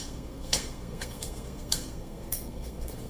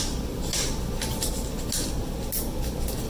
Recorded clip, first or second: second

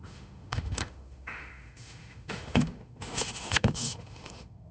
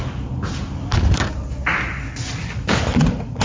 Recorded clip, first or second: second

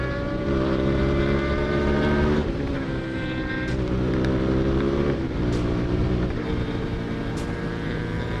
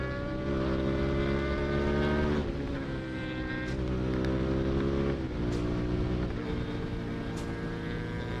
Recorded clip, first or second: second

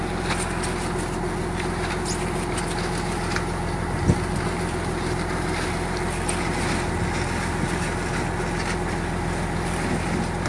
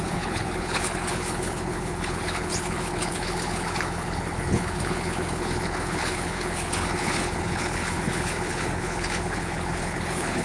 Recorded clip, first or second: first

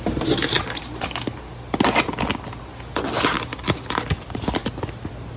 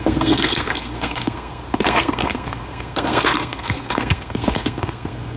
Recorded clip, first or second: first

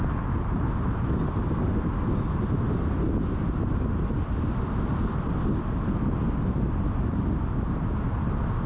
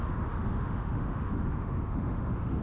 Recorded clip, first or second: first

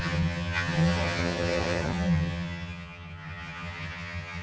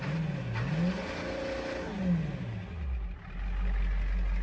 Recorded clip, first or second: second